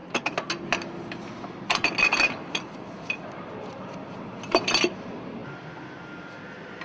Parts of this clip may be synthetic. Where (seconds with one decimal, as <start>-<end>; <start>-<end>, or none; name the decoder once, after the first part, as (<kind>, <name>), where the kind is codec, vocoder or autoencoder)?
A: none